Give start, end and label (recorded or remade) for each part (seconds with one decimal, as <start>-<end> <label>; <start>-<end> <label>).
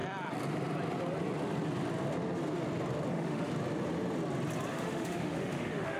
0.0-3.1 recorded; 3.1-3.5 remade; 3.5-4.7 recorded; 4.7-6.0 remade